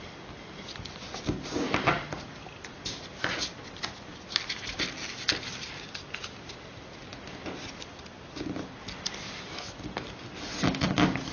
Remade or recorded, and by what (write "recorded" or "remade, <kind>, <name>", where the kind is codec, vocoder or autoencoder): recorded